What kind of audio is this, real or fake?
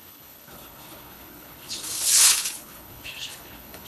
fake